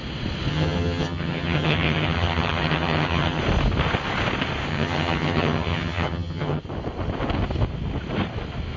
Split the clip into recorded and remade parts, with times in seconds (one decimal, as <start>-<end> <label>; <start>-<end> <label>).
0.0-0.5 recorded; 0.5-3.4 remade; 3.4-4.7 recorded; 4.7-6.6 remade; 6.6-8.8 recorded